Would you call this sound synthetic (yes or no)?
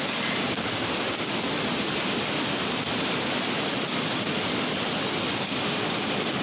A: no